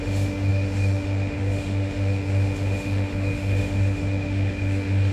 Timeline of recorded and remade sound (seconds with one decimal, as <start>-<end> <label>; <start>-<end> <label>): 0.0-5.1 remade